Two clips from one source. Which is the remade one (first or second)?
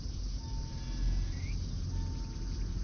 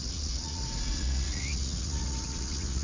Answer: second